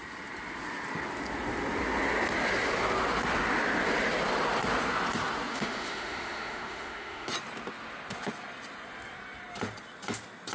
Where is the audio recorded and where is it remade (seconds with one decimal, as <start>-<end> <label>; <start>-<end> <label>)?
0.0-5.5 recorded; 5.5-7.3 remade; 7.3-10.5 recorded